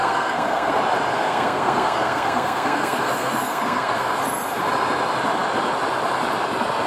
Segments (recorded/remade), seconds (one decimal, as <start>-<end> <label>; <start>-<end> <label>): 0.0-0.7 remade; 0.7-1.1 recorded; 1.1-4.2 remade; 4.2-6.9 recorded

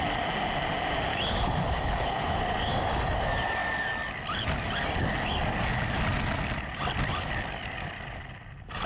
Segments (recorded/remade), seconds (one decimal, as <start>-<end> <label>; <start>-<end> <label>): 0.0-1.1 recorded; 1.1-2.4 remade; 2.4-8.9 recorded

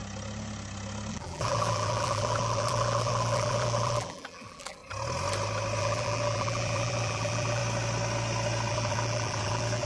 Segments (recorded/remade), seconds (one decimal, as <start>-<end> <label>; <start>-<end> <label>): 0.0-1.1 recorded; 1.1-4.8 remade; 4.8-5.8 recorded; 5.8-7.6 remade; 7.6-8.7 recorded; 8.7-9.9 remade

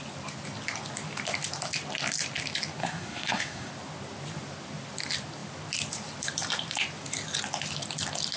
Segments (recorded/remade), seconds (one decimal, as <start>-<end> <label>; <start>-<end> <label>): 0.0-2.8 recorded; 2.8-3.7 remade; 3.7-8.4 recorded

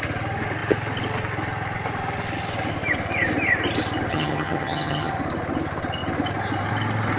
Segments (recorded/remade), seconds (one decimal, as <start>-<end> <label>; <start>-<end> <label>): 0.0-4.1 recorded; 4.1-5.1 remade; 5.1-7.2 recorded

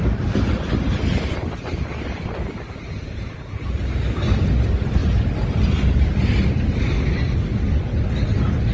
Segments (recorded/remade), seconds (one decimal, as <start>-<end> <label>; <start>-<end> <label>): 0.0-8.7 recorded